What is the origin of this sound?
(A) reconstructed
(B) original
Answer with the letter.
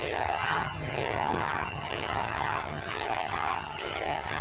A